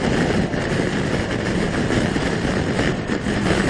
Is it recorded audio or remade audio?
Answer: recorded